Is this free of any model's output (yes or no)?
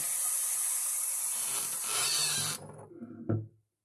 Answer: yes